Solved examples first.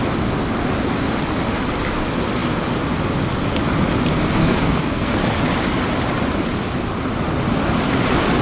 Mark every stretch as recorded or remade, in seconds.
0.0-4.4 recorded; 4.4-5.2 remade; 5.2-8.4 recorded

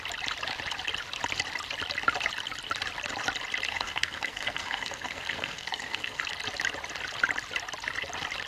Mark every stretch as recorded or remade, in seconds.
0.0-3.7 recorded; 3.7-6.2 remade; 6.2-8.5 recorded